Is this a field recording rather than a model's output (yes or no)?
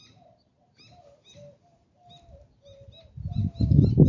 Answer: yes